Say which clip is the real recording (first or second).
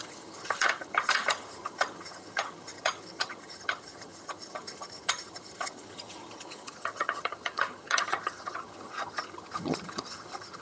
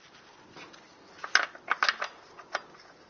second